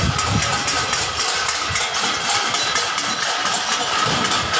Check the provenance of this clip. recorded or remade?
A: recorded